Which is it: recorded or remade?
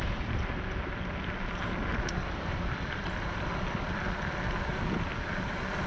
remade